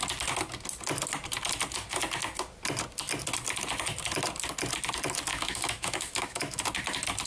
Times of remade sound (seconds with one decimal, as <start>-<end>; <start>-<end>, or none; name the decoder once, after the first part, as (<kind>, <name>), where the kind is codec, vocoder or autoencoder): 5.3-6.6 (autoencoder, DAC-VAE)